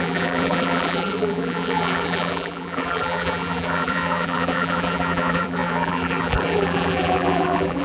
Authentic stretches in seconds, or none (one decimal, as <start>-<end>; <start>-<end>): none